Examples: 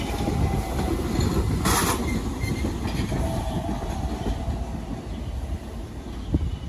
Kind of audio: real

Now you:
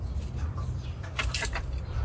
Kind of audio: fake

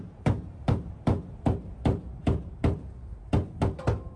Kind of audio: fake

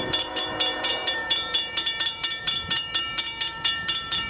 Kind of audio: fake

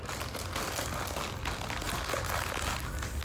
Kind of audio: real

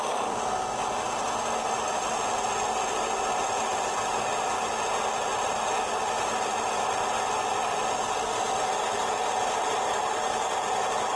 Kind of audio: real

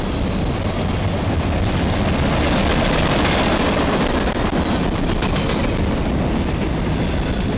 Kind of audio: real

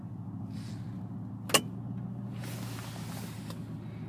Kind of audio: real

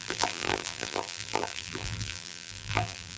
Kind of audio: fake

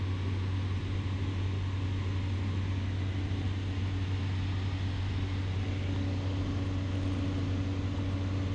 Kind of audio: real